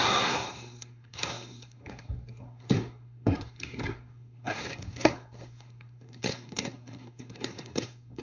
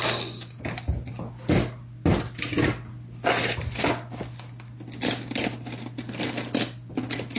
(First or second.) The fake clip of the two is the first